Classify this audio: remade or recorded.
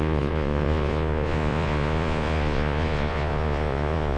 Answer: remade